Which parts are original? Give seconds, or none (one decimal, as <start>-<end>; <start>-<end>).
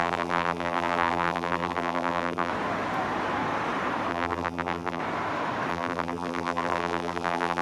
2.5-4.1; 5.0-5.7